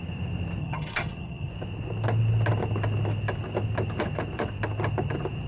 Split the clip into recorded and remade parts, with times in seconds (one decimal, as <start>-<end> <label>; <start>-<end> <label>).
0.0-0.6 recorded; 0.6-1.5 remade; 1.5-5.5 recorded